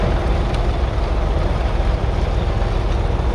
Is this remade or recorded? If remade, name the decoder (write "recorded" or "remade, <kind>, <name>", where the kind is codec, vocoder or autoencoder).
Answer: recorded